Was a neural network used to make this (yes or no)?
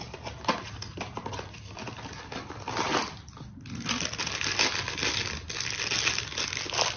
no